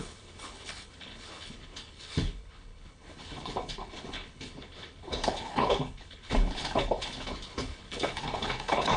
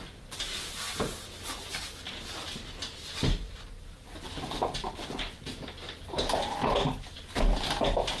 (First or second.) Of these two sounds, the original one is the second